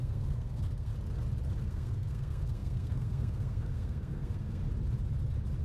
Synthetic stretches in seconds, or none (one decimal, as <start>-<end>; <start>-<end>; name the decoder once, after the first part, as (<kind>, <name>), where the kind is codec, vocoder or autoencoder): 0.0-0.9 (codec, SNAC); 1.6-4.6